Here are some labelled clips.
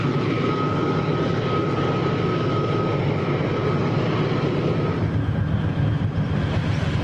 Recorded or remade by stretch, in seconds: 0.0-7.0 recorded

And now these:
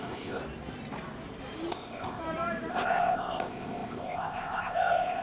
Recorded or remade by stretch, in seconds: 0.0-0.4 remade; 0.4-1.7 recorded; 1.7-2.2 remade; 2.2-2.7 recorded; 2.7-5.2 remade

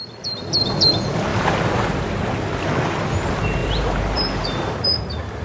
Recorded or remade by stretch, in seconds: 0.0-1.3 recorded; 1.3-2.0 remade; 2.0-3.6 recorded; 3.6-5.0 remade; 5.0-5.4 recorded

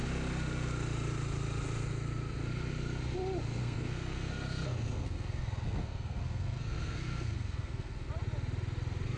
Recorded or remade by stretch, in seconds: 0.0-3.6 recorded; 3.6-8.1 remade; 8.1-9.2 recorded

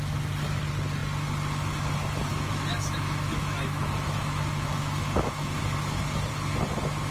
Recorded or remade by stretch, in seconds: 0.0-2.3 recorded; 2.3-5.6 remade; 5.6-7.1 recorded

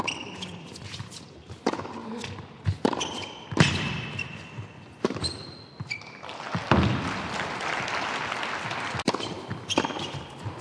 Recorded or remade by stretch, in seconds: 0.0-10.6 recorded

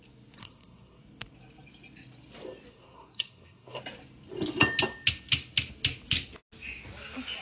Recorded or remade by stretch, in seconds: 0.0-0.4 recorded; 0.4-1.0 remade; 1.0-2.7 recorded; 2.7-3.8 remade; 3.8-7.4 recorded